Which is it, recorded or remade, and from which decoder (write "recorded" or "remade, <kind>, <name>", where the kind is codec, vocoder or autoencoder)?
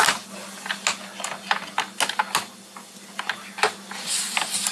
recorded